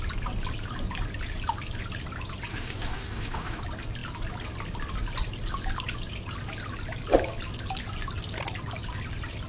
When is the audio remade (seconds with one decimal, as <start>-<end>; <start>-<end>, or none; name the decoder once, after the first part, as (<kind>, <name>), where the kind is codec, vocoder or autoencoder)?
2.5-3.6 (codec, DAC)